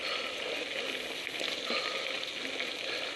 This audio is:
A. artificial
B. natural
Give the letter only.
B